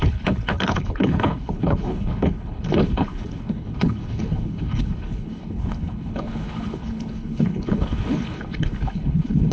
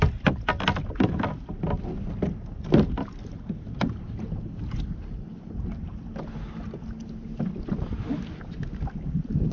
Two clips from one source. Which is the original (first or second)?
second